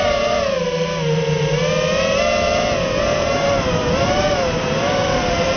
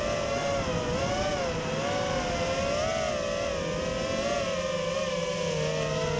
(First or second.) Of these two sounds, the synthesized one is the first